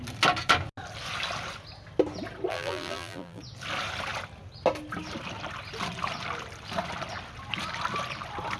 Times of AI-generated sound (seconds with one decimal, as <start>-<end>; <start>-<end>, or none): 2.5-3.4